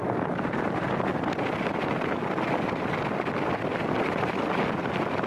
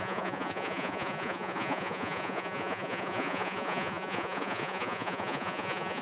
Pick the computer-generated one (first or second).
second